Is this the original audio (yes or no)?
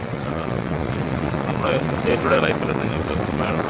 no